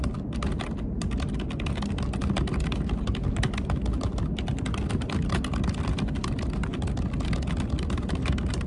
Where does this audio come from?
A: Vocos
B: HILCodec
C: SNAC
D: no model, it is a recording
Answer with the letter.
D